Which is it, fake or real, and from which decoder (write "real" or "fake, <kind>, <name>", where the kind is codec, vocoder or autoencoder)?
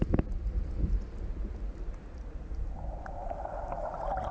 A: real